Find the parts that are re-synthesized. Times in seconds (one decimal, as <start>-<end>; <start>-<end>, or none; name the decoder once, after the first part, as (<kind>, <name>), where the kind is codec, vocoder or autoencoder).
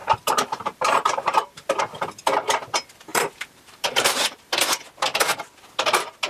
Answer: 0.0-1.8 (vocoder, BigVGAN v2); 3.1-4.6